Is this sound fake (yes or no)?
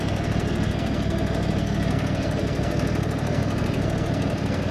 yes